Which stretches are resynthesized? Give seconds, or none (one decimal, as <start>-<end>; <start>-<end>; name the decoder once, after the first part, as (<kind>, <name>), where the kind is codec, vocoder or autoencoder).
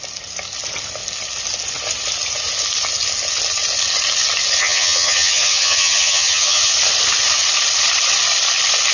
4.6-6.7 (vocoder, HiFi-GAN)